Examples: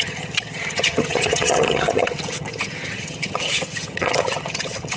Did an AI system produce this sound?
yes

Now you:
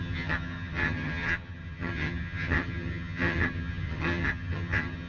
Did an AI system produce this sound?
yes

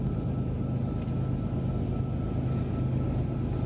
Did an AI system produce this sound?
no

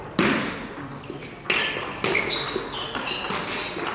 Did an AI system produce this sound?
no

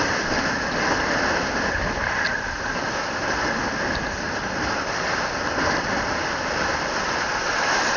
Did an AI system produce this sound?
no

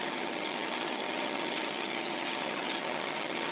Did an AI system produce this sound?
yes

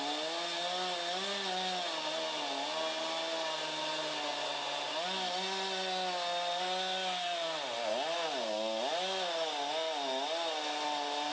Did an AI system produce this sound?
no